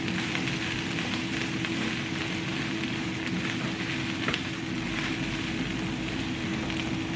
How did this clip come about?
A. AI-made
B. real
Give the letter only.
B